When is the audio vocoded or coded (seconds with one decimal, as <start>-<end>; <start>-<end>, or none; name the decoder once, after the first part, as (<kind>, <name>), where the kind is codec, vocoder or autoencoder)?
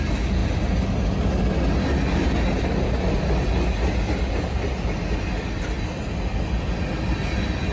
none